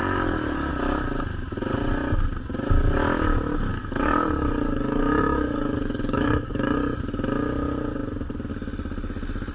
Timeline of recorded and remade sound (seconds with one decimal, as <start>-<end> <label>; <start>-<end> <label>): 0.0-0.7 remade; 0.7-3.7 recorded; 3.7-7.0 remade; 7.0-9.5 recorded